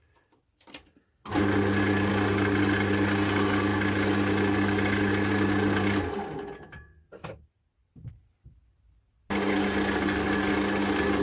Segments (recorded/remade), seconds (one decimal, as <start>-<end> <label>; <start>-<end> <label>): 0.0-11.2 recorded